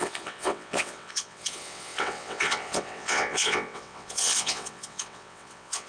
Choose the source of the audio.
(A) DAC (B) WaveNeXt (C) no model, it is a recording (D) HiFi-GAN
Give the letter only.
B